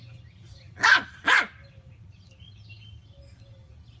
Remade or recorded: recorded